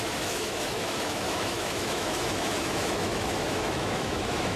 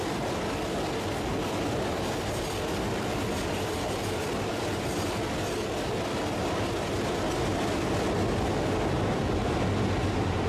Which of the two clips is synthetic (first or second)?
first